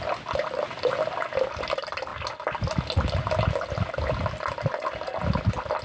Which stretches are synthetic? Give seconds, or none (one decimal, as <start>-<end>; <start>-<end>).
none